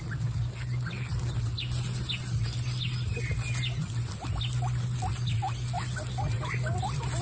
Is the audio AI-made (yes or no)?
no